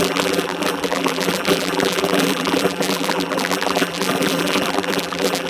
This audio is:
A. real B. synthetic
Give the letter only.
B